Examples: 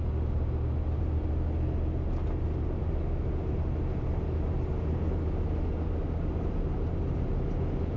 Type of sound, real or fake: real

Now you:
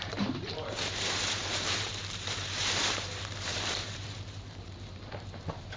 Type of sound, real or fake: fake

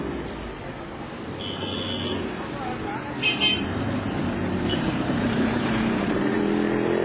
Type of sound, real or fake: real